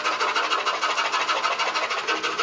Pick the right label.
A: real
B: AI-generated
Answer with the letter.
A